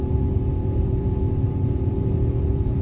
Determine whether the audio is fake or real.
fake